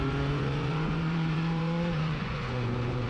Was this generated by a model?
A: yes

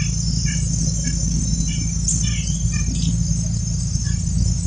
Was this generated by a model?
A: no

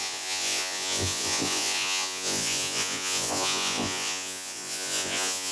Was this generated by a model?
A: yes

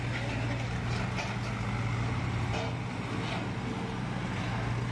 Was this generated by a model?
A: no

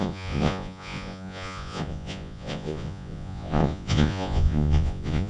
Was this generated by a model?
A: yes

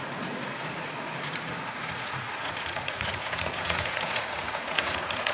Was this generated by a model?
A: yes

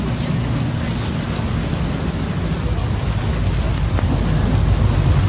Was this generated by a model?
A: no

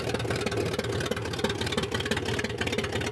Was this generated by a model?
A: no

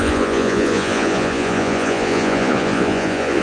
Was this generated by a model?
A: yes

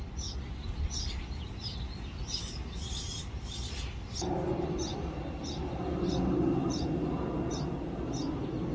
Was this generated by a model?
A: no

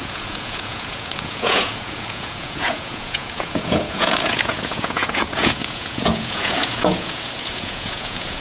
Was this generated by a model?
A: yes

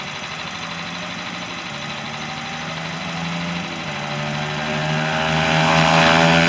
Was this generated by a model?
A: no